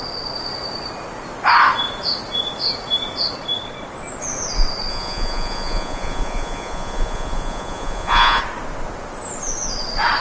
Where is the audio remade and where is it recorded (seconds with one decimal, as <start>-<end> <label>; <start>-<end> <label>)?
0.0-4.9 recorded; 4.9-8.4 remade; 8.4-10.2 recorded